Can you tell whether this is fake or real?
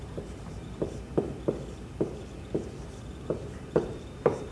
fake